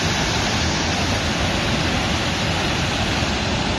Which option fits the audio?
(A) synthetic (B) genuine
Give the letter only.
B